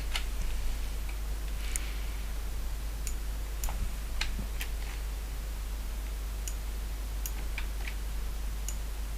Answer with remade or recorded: recorded